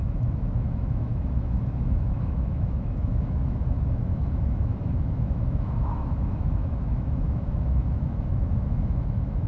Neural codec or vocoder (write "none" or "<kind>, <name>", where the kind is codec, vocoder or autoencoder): autoencoder, DAC-VAE